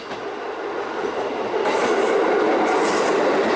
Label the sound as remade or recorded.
recorded